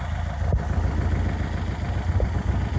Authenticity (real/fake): real